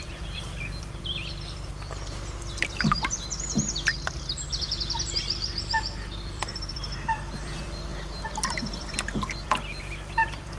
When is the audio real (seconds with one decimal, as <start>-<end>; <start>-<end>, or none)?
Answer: none